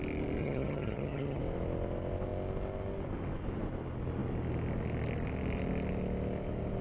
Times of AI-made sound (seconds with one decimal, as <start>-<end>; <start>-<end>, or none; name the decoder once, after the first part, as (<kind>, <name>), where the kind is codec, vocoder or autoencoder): 0.4-1.4 (vocoder, HiFi-GAN)